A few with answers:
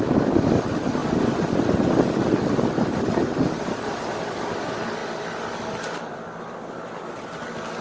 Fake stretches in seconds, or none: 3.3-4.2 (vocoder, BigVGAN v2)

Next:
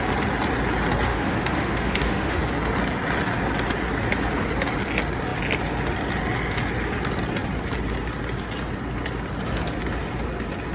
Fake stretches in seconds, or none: 1.1-2.4 (autoencoder, DAC-VAE)

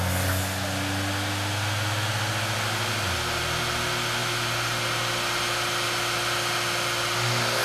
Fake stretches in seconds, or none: none